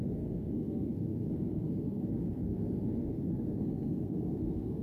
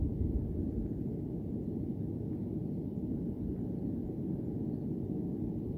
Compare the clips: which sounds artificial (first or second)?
first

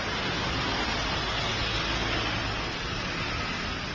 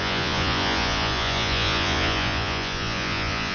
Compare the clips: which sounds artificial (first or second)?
second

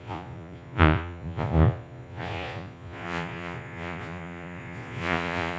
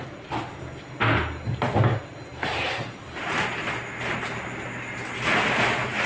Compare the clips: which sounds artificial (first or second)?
first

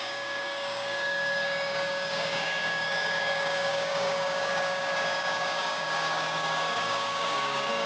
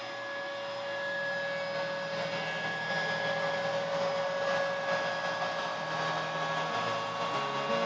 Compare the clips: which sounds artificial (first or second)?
first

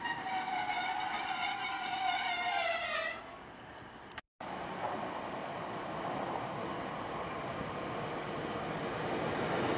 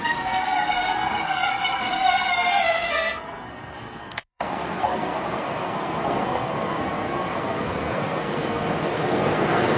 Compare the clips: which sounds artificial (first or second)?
second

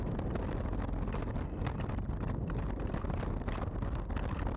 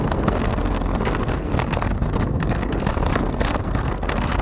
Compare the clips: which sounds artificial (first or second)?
second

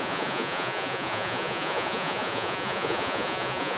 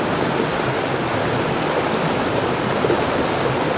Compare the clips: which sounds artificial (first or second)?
first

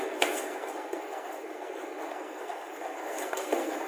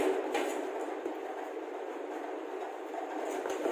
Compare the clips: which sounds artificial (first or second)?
first